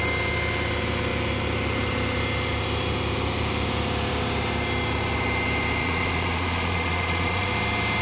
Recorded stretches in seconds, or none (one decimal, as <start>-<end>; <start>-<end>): 0.0-5.8; 7.5-8.0